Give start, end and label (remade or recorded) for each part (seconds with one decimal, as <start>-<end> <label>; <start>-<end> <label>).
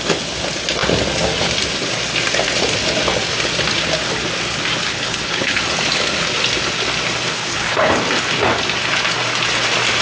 0.0-4.9 recorded; 4.9-5.6 remade; 5.6-7.3 recorded; 7.3-7.9 remade; 7.9-10.0 recorded